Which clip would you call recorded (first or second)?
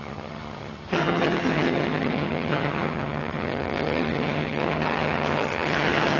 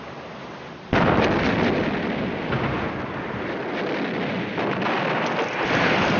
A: second